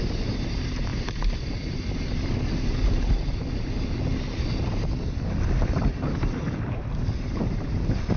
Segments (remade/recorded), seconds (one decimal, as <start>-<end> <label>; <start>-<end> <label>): 0.0-0.9 recorded; 0.9-2.3 remade; 2.3-8.2 recorded